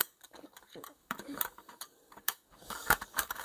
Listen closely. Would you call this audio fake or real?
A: fake